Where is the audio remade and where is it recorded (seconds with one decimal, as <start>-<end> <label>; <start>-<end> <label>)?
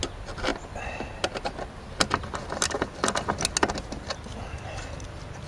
0.0-5.5 recorded